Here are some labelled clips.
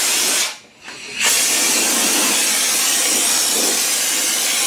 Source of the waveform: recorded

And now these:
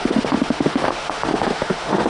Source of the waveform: remade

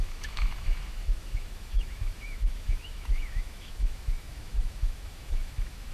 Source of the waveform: remade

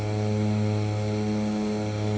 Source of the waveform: recorded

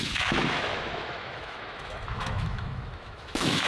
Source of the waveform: remade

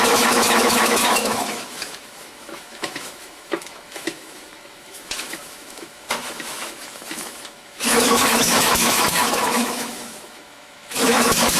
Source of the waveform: remade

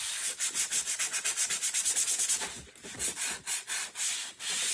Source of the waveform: recorded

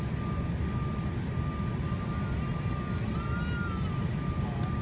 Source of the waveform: recorded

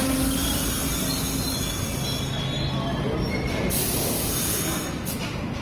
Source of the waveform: recorded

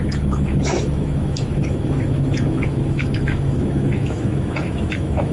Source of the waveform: remade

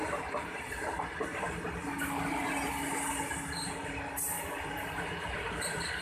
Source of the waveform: recorded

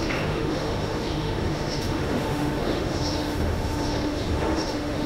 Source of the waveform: remade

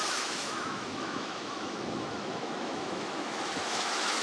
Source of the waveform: remade